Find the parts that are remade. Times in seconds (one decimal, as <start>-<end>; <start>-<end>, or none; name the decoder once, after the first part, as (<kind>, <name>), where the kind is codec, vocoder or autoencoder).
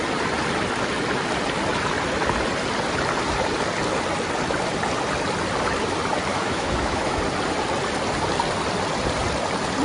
6.3-7.2 (autoencoder, DAC-VAE)